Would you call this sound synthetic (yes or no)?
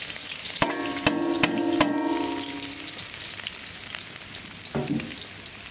no